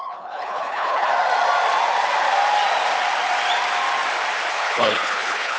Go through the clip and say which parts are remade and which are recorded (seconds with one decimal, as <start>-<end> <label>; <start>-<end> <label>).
0.0-1.1 remade; 1.1-4.5 recorded; 4.5-5.6 remade